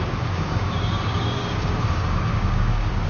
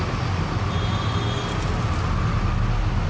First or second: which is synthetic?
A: first